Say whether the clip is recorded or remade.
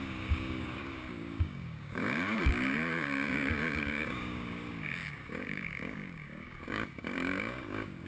remade